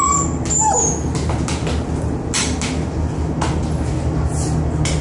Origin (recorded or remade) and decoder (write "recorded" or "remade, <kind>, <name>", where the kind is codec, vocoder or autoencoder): recorded